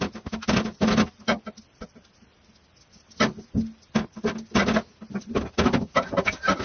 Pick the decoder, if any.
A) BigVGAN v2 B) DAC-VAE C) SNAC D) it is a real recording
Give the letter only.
D